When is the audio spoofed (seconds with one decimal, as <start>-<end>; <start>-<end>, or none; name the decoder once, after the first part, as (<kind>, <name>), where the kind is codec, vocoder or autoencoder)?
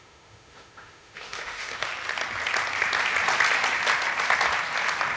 0.0-1.9 (autoencoder, DAC-VAE)